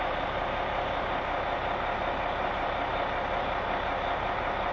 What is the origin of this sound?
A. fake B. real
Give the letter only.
B